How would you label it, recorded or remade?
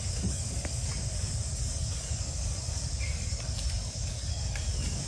remade